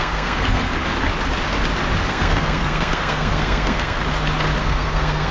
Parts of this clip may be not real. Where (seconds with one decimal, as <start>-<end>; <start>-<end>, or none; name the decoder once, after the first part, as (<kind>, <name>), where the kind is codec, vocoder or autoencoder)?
0.0-0.7 (codec, SNAC); 2.1-4.0; 4.6-5.3